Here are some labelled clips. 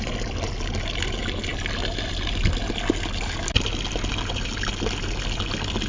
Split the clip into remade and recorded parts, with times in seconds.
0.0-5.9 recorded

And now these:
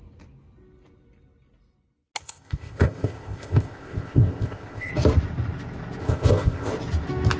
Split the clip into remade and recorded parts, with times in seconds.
0.0-2.2 recorded; 2.2-4.9 remade; 4.9-6.0 recorded; 6.0-6.7 remade; 6.7-7.4 recorded

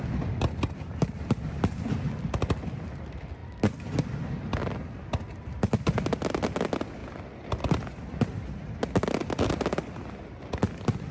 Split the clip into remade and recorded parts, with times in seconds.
0.0-11.1 recorded

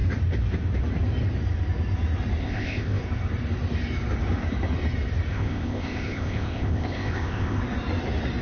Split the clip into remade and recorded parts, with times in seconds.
0.0-2.4 recorded; 2.4-3.0 remade; 3.0-5.3 recorded; 5.3-7.6 remade; 7.6-8.4 recorded

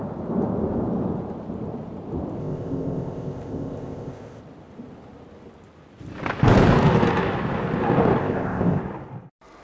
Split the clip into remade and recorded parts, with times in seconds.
0.0-2.4 recorded; 2.4-4.4 remade; 4.4-8.2 recorded; 8.2-8.8 remade; 8.8-9.6 recorded

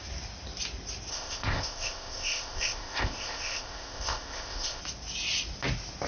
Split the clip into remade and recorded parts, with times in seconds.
0.0-1.1 recorded; 1.1-4.8 remade; 4.8-6.1 recorded

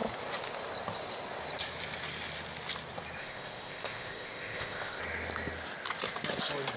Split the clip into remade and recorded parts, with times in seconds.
0.0-3.2 recorded; 3.2-5.0 remade; 5.0-6.8 recorded